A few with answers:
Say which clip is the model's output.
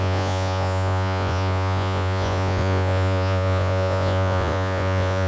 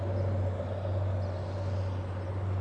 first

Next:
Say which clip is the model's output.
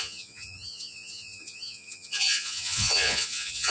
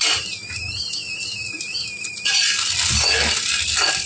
first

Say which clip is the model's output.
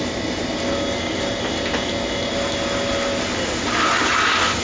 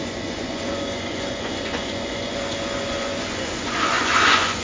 second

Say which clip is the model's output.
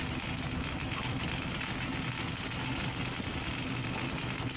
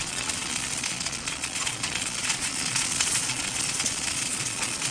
second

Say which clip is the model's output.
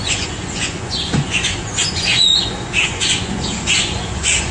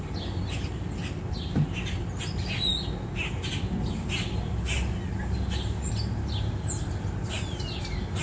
first